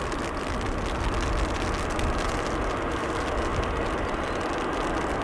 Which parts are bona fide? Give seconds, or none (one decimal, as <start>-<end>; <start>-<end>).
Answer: 0.0-5.2